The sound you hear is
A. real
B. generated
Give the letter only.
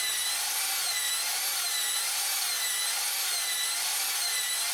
A